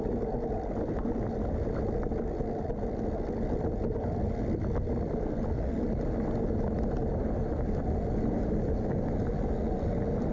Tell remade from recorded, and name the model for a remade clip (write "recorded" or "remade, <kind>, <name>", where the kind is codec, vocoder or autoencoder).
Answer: recorded